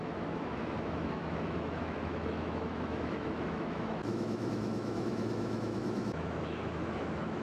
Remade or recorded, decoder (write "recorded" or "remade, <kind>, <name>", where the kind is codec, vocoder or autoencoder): remade, autoencoder, DAC-VAE